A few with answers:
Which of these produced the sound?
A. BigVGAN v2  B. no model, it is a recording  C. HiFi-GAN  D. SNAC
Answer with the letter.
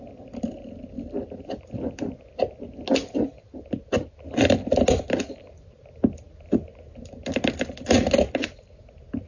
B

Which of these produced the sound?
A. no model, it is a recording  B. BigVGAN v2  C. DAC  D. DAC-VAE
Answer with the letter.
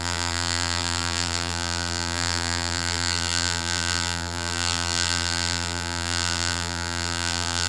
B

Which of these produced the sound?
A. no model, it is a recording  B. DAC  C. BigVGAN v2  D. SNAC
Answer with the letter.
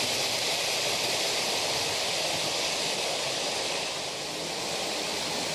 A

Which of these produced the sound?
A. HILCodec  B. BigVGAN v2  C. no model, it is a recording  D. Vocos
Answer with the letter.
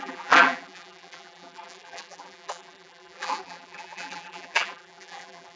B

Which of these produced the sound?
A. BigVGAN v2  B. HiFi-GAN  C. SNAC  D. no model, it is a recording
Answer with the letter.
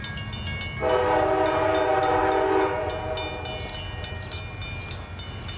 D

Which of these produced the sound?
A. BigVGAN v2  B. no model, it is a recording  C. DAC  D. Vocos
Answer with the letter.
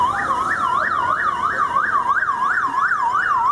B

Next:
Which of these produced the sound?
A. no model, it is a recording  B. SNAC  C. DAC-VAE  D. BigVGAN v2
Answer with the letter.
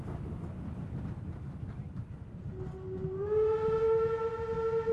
A